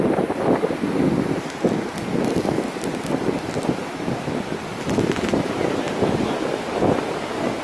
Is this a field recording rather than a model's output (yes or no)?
yes